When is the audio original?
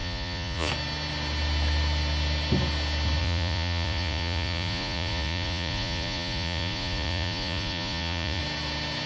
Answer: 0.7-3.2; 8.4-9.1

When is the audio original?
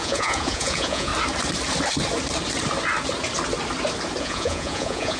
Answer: 1.1-4.2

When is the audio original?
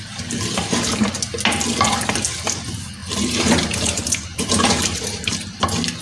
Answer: 0.0-3.0; 5.6-6.0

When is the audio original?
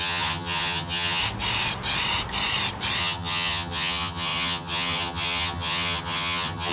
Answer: 1.2-3.0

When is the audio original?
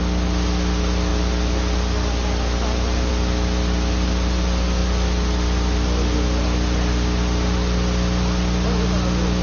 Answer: 0.0-9.4